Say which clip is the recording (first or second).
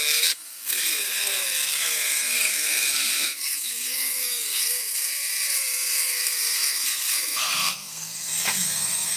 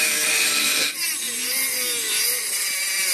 second